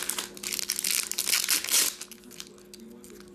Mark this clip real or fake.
real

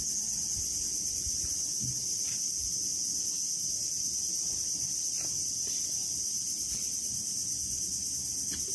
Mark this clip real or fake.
real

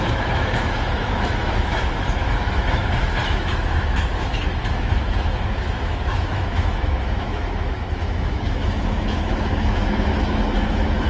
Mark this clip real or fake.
fake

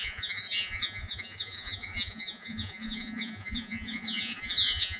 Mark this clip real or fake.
fake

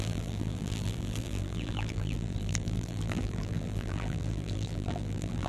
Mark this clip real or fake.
fake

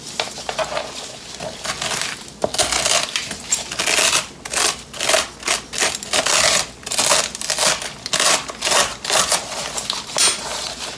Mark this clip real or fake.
real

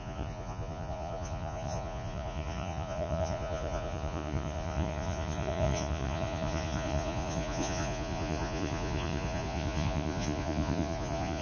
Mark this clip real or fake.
fake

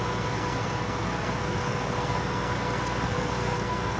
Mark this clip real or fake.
fake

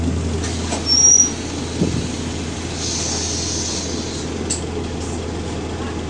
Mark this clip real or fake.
real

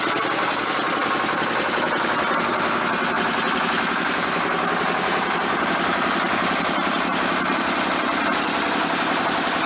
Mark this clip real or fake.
real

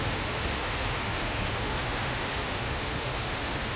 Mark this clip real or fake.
fake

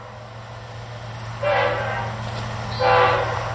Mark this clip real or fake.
real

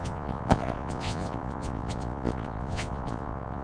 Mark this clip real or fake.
fake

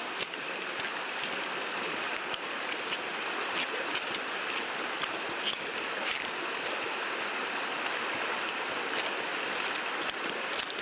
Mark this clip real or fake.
real